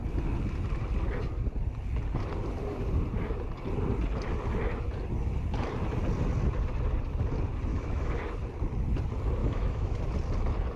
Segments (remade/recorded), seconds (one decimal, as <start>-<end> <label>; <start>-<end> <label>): 0.0-7.7 recorded; 7.7-8.2 remade; 8.2-9.4 recorded; 9.4-10.0 remade; 10.0-10.8 recorded